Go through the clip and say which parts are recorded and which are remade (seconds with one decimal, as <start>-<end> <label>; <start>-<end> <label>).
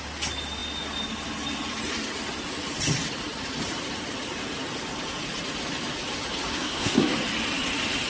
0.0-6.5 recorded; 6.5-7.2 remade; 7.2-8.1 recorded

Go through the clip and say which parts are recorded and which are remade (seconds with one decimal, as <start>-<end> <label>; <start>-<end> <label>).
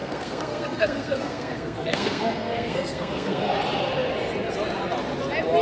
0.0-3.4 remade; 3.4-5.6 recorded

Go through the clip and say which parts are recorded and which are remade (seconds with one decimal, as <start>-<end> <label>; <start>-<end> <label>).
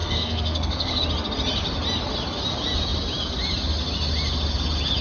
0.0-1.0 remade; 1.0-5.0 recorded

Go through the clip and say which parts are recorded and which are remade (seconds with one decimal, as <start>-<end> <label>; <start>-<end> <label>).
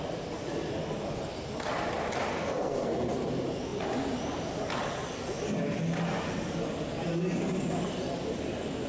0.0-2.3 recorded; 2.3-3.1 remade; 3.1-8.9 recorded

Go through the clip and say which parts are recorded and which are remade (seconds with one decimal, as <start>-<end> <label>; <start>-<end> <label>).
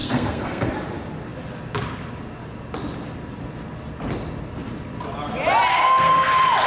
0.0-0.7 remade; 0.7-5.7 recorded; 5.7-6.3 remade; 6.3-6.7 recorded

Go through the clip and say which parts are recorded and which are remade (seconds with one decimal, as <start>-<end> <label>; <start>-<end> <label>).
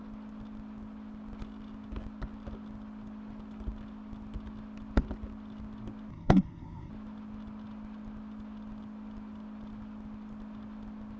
0.0-6.1 recorded; 6.1-6.9 remade; 6.9-11.2 recorded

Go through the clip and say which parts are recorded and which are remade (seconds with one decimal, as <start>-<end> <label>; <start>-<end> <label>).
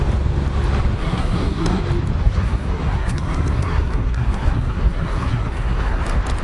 0.0-1.0 recorded; 1.0-1.8 remade; 1.8-2.2 recorded; 2.2-6.0 remade; 6.0-6.4 recorded